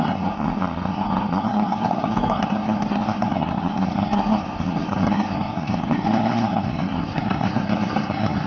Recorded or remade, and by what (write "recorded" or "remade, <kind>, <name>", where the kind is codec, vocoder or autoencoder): remade, codec, SNAC